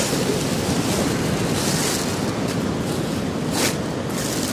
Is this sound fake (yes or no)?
no